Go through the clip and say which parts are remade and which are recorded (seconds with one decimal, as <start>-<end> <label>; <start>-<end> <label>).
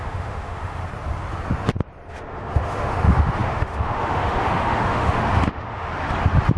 0.0-0.8 remade; 0.8-2.1 recorded; 2.1-5.9 remade; 5.9-6.6 recorded